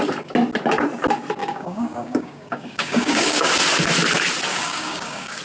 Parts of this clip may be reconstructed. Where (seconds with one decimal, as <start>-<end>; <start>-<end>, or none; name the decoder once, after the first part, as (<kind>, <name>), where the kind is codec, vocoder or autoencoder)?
1.4-3.5 (codec, DAC); 4.5-5.4